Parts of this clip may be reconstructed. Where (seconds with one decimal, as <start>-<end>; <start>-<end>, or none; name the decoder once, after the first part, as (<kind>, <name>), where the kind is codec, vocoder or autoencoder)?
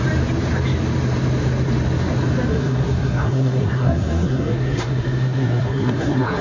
2.5-6.4 (codec, SNAC)